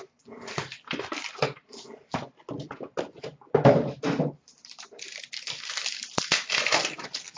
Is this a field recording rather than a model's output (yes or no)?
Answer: no